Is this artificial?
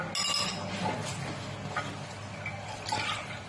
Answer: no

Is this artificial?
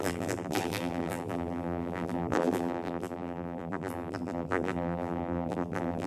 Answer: yes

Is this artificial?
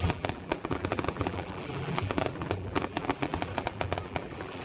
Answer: yes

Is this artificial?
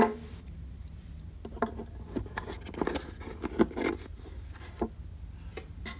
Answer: no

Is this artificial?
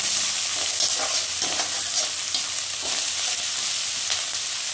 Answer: no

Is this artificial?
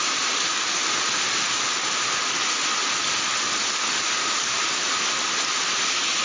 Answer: no